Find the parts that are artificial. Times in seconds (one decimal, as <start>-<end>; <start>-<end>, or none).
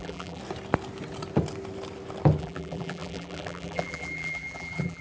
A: 0.0-0.4; 2.4-5.0